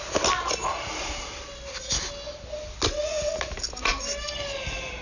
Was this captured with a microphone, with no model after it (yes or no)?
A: yes